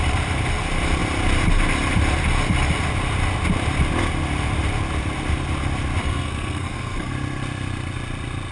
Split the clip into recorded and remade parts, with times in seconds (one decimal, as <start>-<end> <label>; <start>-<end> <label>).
0.0-6.0 recorded; 6.0-7.1 remade; 7.1-8.5 recorded